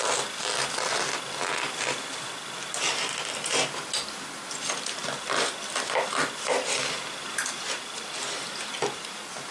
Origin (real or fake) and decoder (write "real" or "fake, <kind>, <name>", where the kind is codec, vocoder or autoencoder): real